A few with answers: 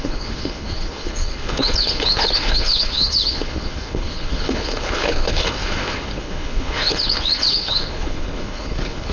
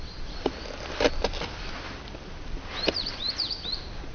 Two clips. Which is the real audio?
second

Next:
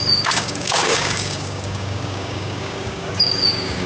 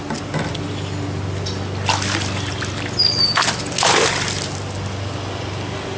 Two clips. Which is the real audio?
second